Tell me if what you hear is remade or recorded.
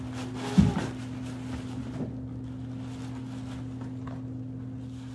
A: recorded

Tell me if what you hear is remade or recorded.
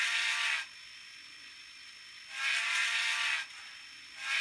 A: recorded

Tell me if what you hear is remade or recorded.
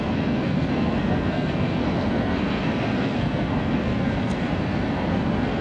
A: remade